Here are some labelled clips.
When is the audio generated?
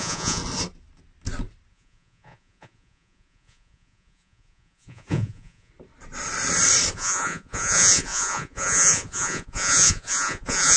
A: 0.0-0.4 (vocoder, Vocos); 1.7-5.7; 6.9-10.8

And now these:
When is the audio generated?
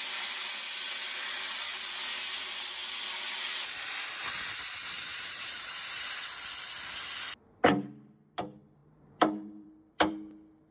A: 5.1-5.9 (vocoder, BigVGAN v2); 8.8-10.1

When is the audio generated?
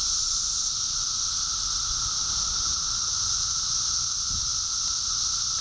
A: none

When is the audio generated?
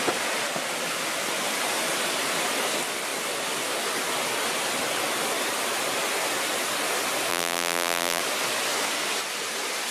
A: 7.3-8.2 (vocoder, BigVGAN v2)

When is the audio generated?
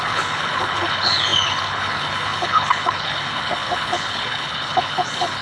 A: 0.0-5.4 (codec, HILCodec)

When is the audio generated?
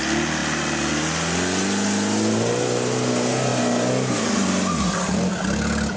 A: none